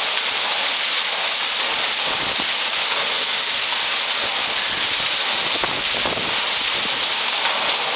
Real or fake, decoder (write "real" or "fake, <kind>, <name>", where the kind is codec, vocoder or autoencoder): real